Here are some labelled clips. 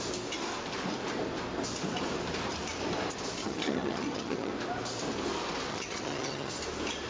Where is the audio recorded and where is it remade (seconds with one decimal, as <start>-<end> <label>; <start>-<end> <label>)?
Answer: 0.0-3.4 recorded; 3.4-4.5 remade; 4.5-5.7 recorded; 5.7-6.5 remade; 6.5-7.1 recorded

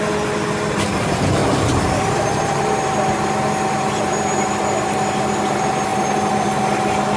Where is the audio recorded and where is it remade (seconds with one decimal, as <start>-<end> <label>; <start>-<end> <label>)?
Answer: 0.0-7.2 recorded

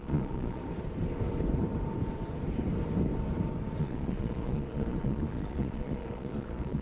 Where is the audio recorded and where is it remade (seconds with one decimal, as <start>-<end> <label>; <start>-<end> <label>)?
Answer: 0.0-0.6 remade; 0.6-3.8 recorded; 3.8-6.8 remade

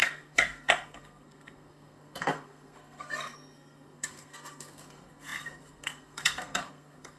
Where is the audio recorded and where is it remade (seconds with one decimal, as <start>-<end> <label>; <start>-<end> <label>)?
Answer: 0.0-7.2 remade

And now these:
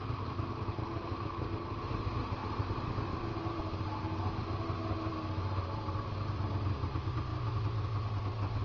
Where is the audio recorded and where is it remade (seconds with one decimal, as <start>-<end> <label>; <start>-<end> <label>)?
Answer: 0.0-2.4 recorded; 2.4-4.0 remade; 4.0-8.6 recorded